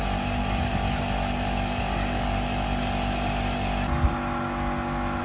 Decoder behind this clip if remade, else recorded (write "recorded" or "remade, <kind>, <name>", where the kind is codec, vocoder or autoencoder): recorded